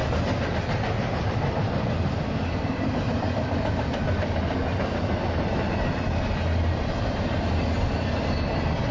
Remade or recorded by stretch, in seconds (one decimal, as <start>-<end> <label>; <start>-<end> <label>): 0.0-8.9 recorded